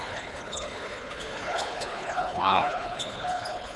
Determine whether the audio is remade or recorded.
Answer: remade